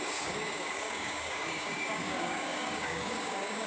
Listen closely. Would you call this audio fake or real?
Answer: fake